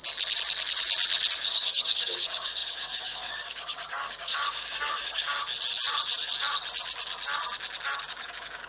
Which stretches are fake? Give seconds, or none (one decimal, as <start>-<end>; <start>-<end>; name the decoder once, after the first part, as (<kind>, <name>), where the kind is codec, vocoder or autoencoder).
1.5-5.3 (codec, DAC); 8.1-8.7